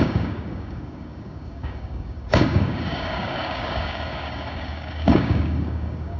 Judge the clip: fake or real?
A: fake